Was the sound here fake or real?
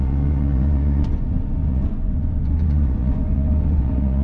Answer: fake